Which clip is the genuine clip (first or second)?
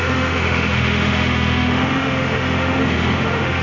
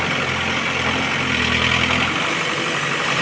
second